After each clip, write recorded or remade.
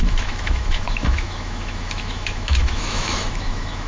remade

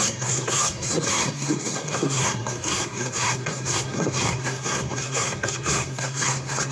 remade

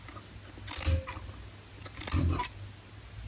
recorded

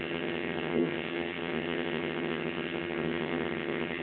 remade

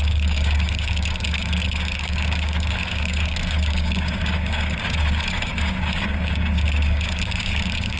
remade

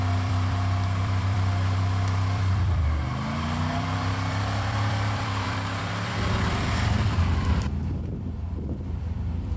remade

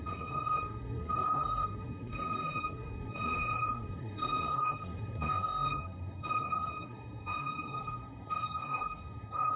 remade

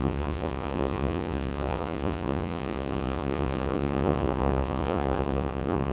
remade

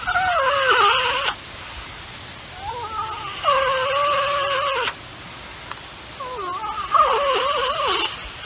recorded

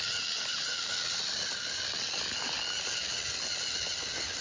recorded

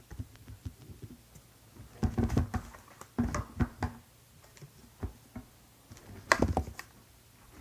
recorded